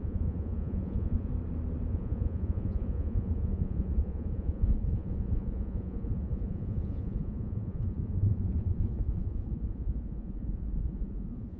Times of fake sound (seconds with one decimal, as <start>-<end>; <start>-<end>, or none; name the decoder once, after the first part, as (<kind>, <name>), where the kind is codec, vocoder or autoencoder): 0.0-1.3 (vocoder, Vocos); 1.9-11.6